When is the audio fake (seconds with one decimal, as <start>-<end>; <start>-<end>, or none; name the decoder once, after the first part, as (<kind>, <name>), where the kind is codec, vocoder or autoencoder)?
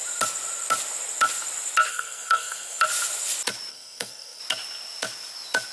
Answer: 1.9-2.8 (codec, SNAC); 3.7-4.4